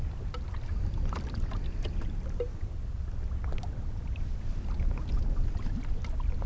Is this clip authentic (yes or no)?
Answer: yes